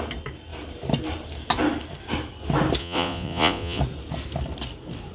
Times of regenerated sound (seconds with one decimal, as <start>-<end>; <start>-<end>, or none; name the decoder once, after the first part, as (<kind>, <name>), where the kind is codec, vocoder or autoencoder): 2.8-3.8 (vocoder, Vocos)